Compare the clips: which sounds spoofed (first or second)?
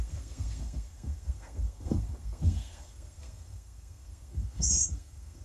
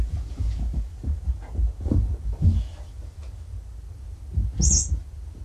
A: first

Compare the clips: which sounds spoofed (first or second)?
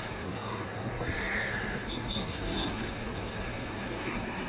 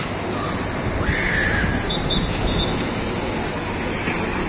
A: first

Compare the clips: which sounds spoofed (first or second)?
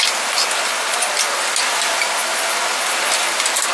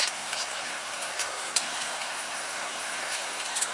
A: second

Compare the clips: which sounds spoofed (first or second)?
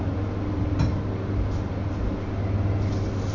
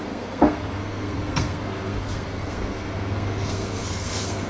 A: second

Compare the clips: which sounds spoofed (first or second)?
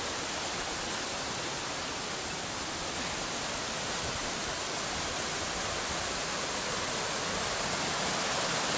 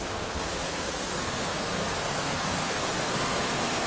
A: second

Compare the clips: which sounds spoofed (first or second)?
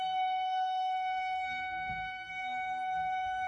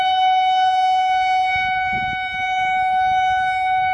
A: first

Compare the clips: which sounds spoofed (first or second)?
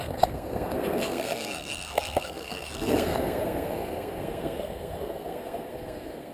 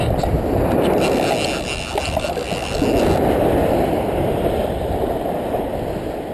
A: first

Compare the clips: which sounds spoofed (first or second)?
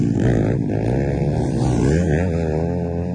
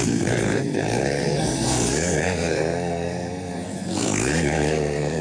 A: second